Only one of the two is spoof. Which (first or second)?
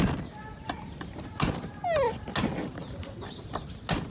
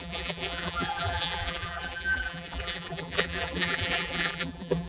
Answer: second